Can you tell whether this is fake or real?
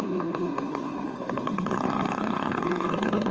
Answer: fake